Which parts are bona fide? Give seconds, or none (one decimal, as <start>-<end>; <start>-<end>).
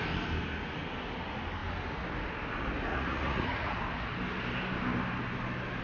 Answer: 0.0-2.9; 3.7-5.8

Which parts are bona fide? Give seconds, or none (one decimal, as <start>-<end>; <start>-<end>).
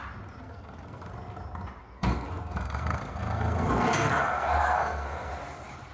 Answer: 0.0-0.4; 1.1-1.8; 5.3-5.9